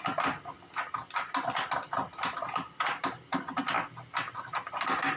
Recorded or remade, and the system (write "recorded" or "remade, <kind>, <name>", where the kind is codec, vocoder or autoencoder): recorded